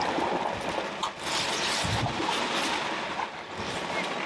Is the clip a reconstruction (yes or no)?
no